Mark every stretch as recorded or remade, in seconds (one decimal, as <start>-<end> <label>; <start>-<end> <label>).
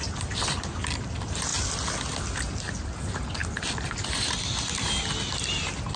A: 0.0-6.0 recorded